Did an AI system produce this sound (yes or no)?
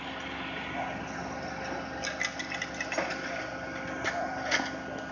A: no